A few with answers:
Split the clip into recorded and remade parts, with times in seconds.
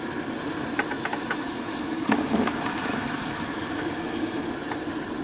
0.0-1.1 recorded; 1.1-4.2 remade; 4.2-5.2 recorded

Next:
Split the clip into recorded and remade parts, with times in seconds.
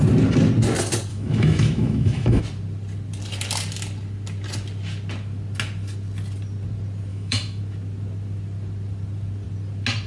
0.0-1.1 recorded; 1.1-2.4 remade; 2.4-7.1 recorded; 7.1-7.6 remade; 7.6-10.1 recorded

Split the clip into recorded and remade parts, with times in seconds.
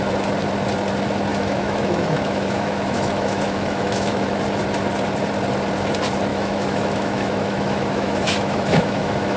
0.0-1.3 recorded; 1.3-4.4 remade; 4.4-6.3 recorded; 6.3-9.4 remade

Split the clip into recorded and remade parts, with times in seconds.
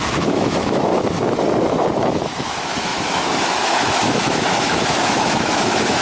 0.0-0.9 remade; 0.9-2.0 recorded; 2.0-6.0 remade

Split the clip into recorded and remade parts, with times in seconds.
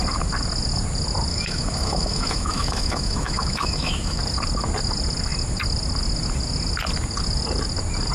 0.0-1.3 recorded; 1.3-4.2 remade; 4.2-8.1 recorded